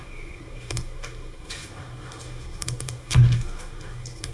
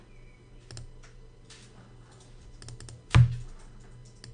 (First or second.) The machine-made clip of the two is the first